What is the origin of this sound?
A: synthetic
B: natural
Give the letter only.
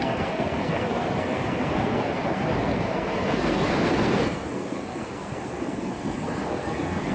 A